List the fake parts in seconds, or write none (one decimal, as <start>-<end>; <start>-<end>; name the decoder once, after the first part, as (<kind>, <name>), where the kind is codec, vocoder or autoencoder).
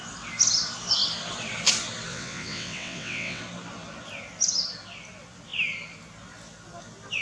2.1-3.4 (vocoder, WaveNeXt)